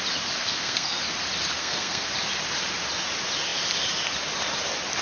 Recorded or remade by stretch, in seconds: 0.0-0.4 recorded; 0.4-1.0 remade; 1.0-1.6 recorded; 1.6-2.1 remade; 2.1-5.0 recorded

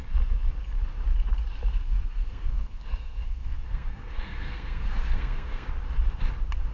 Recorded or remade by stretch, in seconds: 0.0-1.7 recorded; 1.7-5.7 remade; 5.7-6.7 recorded

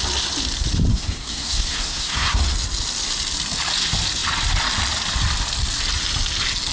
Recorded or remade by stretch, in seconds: 0.0-0.9 recorded; 0.9-2.4 remade; 2.4-6.7 recorded

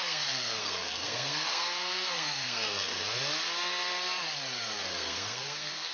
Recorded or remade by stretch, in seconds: 0.0-2.9 remade; 2.9-4.8 recorded; 4.8-5.9 remade

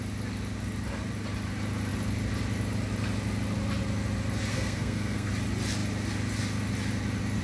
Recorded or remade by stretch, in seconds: 0.0-4.5 recorded; 4.5-5.3 remade; 5.3-7.4 recorded

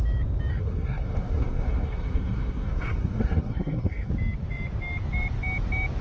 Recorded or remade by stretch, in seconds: 0.0-0.5 recorded; 0.5-4.1 remade; 4.1-6.0 recorded

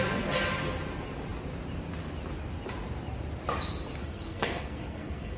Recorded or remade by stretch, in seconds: 0.0-4.0 recorded; 4.0-5.4 remade